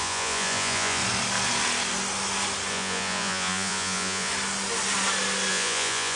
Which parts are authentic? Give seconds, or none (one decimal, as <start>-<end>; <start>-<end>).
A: 1.0-2.7; 4.3-5.5